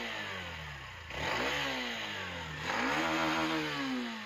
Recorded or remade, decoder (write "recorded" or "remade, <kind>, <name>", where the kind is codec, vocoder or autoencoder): recorded